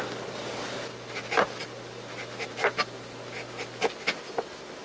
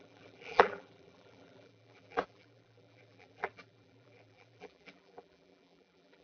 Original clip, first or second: first